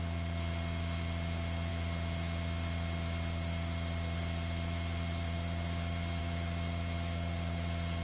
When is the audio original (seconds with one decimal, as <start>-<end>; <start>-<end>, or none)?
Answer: 0.0-8.0